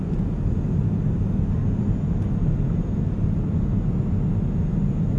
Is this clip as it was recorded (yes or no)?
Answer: yes